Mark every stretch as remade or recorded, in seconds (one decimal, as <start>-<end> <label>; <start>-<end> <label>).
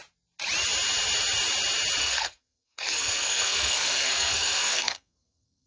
0.0-2.0 recorded; 2.0-5.7 remade